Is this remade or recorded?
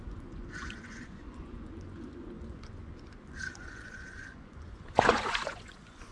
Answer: remade